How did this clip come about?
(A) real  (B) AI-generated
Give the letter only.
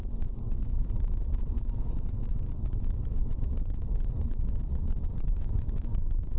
B